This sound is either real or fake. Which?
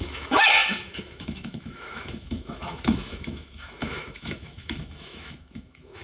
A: fake